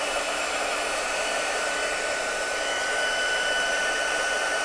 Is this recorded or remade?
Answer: remade